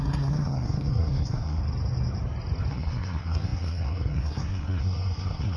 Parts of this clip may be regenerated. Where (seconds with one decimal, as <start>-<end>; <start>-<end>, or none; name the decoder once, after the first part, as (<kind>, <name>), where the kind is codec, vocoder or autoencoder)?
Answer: 0.0-1.6 (codec, SNAC); 2.7-5.6